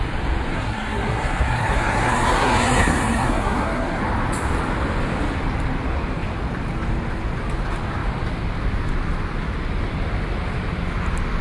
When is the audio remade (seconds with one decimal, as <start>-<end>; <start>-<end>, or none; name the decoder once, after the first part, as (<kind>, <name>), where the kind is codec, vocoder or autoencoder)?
0.5-4.0 (codec, SNAC)